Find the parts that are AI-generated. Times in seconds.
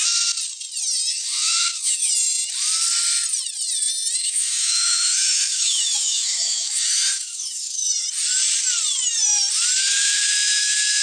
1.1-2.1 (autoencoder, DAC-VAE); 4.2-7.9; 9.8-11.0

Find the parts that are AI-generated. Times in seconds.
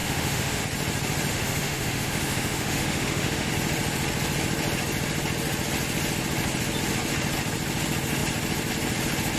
0.0-0.6 (autoencoder, DAC-VAE); 1.3-3.5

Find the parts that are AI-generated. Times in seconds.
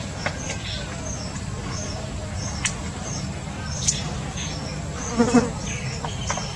1.6-3.5 (vocoder, BigVGAN v2)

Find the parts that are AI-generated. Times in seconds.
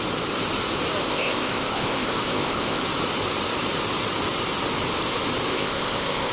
1.1-2.8 (codec, ZipCodec); 5.5-6.3